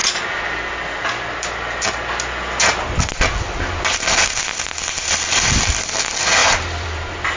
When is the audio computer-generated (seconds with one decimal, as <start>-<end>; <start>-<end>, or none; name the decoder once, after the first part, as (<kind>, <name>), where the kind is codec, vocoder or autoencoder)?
6.4-7.4 (vocoder, BigVGAN v2)